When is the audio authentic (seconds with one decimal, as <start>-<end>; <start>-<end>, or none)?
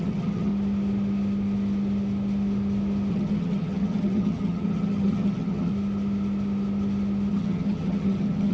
0.5-3.1; 5.7-7.3